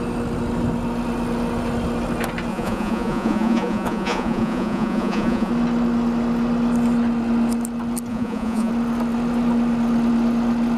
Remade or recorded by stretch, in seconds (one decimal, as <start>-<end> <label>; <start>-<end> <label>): 0.0-2.5 recorded; 2.5-5.5 remade; 5.5-8.1 recorded; 8.1-8.7 remade; 8.7-10.8 recorded